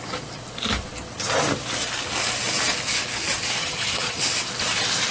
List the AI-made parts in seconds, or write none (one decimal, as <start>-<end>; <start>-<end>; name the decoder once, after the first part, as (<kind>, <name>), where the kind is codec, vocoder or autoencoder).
3.6-4.2 (vocoder, HiFi-GAN)